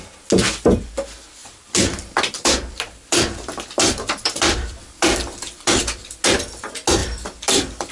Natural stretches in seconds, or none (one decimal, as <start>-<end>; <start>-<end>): 0.0-1.4; 6.1-7.0